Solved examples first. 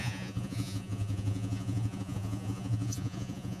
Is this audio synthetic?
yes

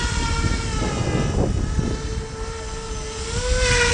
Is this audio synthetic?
no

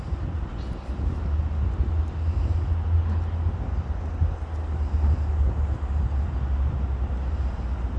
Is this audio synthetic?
no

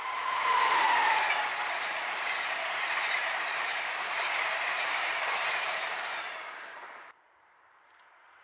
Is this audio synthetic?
yes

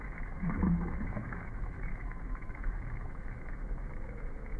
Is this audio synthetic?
yes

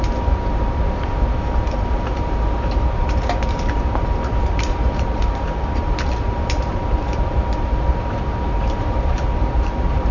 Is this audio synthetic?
yes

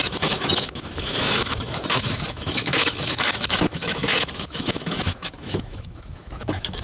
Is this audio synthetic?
yes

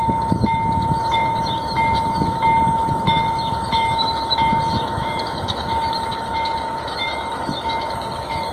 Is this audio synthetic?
yes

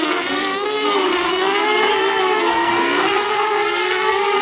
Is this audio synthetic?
yes